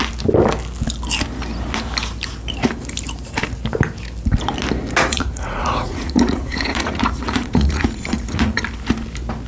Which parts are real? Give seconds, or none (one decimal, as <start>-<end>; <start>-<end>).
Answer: 0.0-5.1; 8.6-9.5